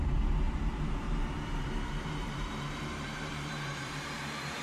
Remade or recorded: remade